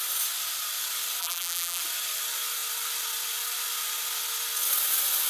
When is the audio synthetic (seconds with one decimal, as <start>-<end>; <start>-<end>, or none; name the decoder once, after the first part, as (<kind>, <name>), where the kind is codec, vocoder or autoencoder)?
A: 1.2-1.8 (vocoder, BigVGAN v2)